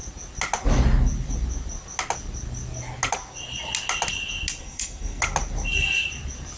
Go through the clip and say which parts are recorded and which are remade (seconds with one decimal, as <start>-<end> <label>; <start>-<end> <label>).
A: 0.0-4.6 recorded; 4.6-5.2 remade; 5.2-6.6 recorded